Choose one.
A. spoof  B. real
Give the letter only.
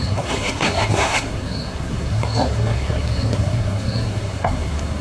A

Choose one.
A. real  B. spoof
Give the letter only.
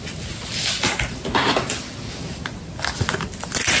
A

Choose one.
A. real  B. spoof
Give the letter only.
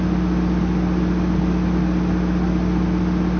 A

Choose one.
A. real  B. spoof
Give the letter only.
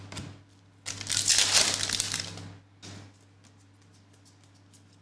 B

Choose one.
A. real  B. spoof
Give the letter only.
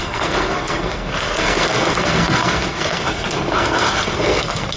B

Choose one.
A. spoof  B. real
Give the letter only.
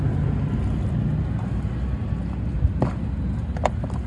B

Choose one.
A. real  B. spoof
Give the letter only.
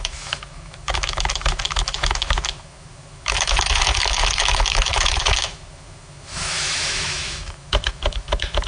B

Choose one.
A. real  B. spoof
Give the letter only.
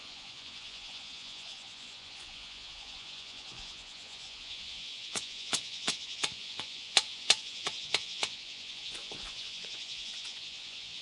B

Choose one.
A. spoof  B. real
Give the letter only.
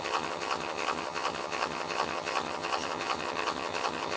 A